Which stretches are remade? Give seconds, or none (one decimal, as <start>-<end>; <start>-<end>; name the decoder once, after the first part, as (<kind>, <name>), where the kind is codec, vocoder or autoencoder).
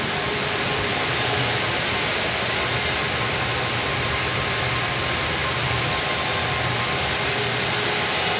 none